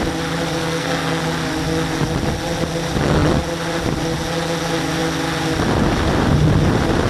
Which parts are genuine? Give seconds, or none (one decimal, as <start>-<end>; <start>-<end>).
0.0-0.6; 1.2-7.1